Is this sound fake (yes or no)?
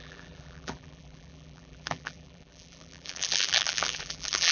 yes